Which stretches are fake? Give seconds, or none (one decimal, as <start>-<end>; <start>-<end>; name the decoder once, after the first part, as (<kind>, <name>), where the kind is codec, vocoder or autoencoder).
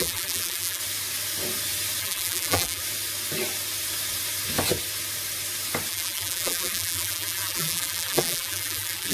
0.0-0.8 (vocoder, BigVGAN v2); 2.0-2.8; 5.9-9.1